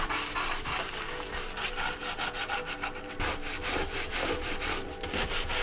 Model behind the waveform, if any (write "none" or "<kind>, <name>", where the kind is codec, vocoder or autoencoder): none